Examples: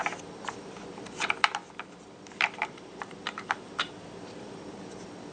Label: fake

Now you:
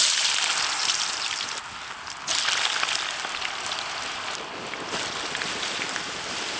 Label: real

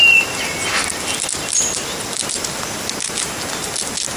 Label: real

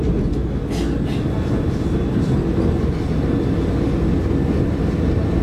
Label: real